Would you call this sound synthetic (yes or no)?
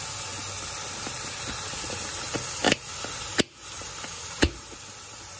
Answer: no